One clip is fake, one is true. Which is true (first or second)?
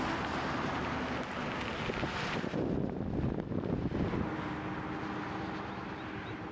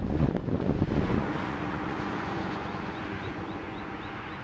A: first